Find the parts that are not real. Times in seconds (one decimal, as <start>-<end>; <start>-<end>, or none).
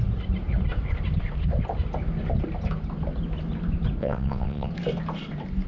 4.0-4.7